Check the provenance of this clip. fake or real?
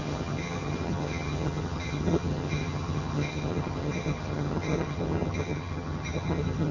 fake